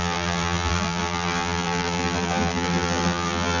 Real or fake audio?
fake